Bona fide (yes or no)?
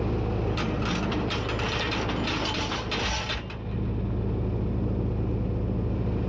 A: yes